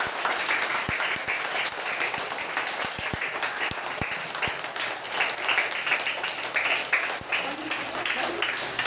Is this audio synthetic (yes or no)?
no